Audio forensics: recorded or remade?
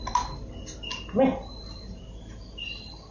recorded